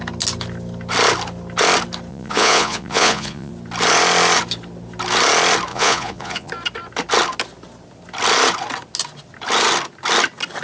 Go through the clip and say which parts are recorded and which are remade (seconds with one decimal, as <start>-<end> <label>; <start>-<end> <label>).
0.0-2.1 recorded; 2.1-3.5 remade; 3.5-5.7 recorded; 5.7-6.5 remade; 6.5-10.6 recorded